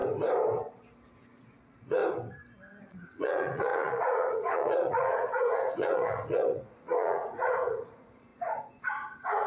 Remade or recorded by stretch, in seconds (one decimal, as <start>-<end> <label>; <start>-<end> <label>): 0.0-1.4 recorded; 1.4-2.0 remade; 2.0-2.8 recorded; 2.8-9.5 remade